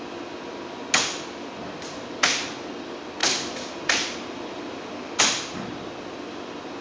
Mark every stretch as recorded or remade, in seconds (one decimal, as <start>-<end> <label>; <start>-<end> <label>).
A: 0.0-6.8 recorded